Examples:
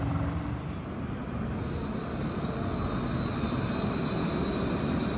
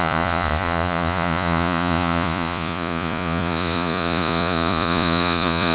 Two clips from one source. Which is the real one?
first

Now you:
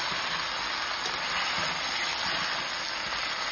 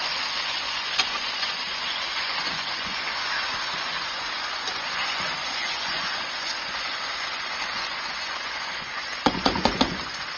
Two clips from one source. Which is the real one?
first